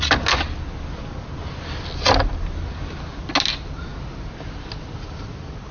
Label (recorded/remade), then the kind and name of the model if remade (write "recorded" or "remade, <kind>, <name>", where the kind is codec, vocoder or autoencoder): recorded